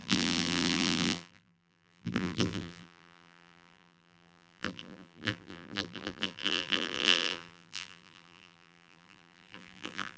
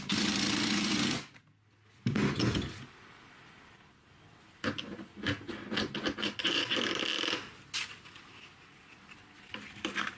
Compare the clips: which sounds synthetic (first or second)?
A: first